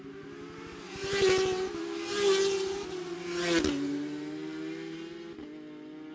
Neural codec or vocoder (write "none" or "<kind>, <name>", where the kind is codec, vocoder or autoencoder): none